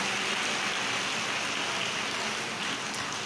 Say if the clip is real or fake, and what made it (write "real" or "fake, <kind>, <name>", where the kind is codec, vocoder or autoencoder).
real